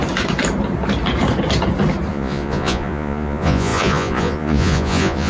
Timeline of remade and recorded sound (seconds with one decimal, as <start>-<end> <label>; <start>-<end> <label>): 0.0-2.1 recorded; 2.1-5.3 remade